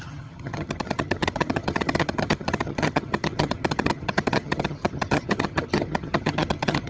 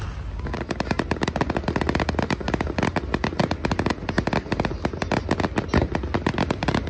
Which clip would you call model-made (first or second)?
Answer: first